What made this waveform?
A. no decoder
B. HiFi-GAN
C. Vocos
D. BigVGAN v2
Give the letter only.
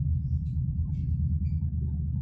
A